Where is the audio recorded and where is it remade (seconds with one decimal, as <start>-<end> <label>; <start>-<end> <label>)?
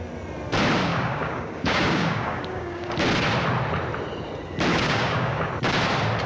0.0-0.9 recorded; 0.9-2.9 remade; 2.9-4.7 recorded; 4.7-5.5 remade; 5.5-6.3 recorded